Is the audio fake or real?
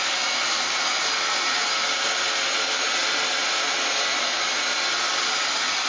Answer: real